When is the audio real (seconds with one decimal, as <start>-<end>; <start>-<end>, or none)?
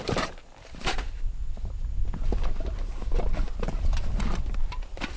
1.4-4.5